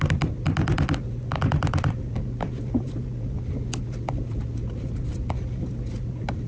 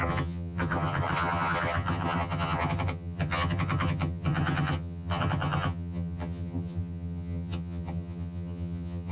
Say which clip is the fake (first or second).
second